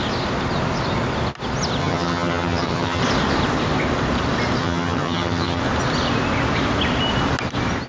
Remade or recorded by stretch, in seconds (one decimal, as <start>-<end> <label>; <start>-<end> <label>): 0.0-1.8 recorded; 1.8-3.0 remade; 3.0-4.6 recorded; 4.6-5.6 remade; 5.6-7.9 recorded